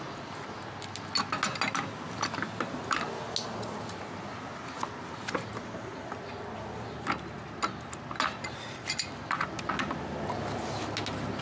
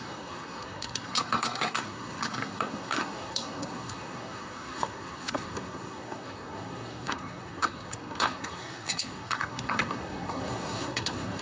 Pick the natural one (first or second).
first